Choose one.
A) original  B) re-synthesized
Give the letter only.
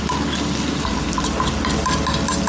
A